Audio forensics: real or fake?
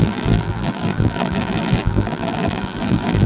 fake